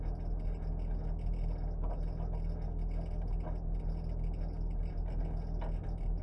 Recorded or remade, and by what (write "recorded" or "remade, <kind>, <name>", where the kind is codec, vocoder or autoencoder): recorded